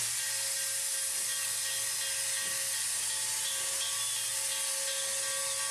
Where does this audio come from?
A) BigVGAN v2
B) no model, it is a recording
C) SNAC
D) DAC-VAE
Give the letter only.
B